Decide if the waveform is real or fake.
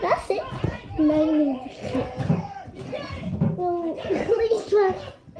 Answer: real